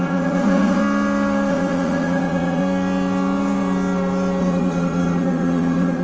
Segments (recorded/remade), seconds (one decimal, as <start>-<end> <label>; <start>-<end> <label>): 0.0-0.8 remade; 0.8-1.5 recorded; 1.5-2.6 remade; 2.6-4.4 recorded; 4.4-6.0 remade